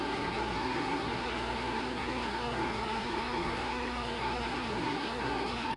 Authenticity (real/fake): fake